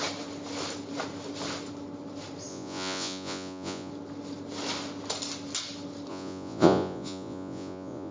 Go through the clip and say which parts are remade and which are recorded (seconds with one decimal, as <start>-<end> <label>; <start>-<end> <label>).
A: 0.0-2.5 recorded; 2.5-3.9 remade; 3.9-6.1 recorded; 6.1-8.1 remade